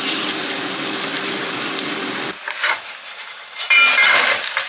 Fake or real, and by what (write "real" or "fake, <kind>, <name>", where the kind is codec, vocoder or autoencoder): fake, vocoder, BigVGAN v2